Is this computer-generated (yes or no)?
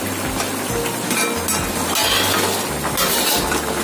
no